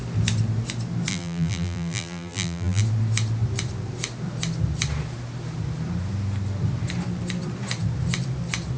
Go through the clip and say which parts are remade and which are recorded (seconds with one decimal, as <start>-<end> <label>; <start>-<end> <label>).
0.0-1.1 recorded; 1.1-2.8 remade; 2.8-8.8 recorded